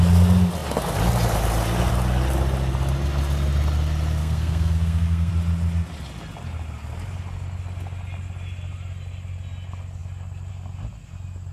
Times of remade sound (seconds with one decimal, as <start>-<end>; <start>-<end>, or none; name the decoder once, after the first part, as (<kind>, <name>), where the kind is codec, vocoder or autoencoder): 4.2-5.3 (codec, SNAC)